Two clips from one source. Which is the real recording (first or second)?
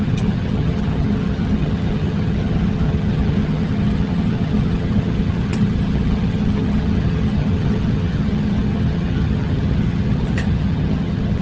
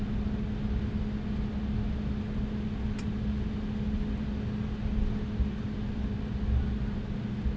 second